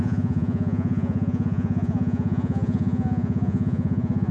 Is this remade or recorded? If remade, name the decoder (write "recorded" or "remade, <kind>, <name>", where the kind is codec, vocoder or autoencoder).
remade, vocoder, Vocos